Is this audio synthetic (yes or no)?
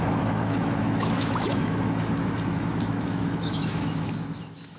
yes